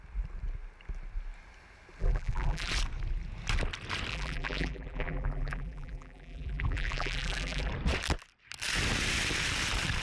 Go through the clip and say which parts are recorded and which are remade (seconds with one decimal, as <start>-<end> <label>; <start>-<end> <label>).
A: 0.0-2.0 recorded; 2.0-2.7 remade; 2.7-4.1 recorded; 4.1-7.7 remade; 7.7-10.0 recorded